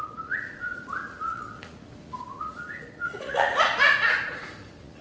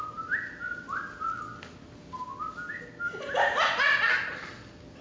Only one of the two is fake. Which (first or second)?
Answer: first